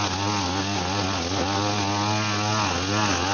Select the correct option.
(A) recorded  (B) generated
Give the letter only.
A